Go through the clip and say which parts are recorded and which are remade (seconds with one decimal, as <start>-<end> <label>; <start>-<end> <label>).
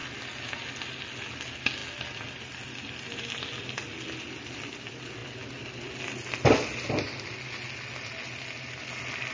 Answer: 0.0-9.3 recorded